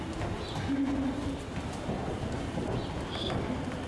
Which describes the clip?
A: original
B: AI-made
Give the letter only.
A